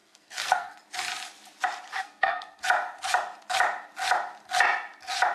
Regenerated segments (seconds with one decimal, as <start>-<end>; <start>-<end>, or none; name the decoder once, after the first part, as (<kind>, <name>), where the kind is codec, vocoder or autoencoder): 0.0-0.8 (codec, SNAC); 1.9-2.6